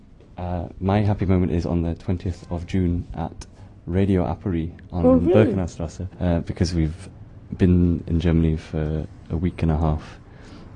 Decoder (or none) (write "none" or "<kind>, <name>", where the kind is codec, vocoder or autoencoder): none